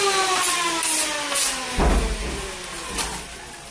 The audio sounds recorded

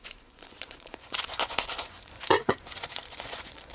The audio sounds remade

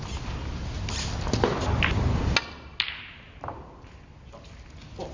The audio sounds recorded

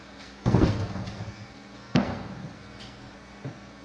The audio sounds remade